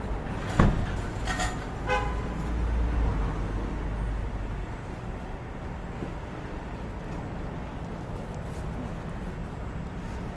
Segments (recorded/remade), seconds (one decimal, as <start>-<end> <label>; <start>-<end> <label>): 0.0-9.4 recorded; 9.4-10.4 remade